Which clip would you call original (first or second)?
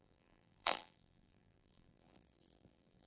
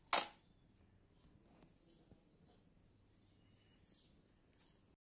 second